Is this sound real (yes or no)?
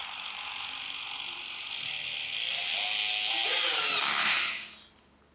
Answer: yes